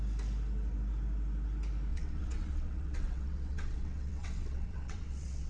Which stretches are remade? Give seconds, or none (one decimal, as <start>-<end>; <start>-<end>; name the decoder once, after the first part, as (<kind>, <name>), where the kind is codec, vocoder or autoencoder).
1.9-5.5 (vocoder, WaveNeXt)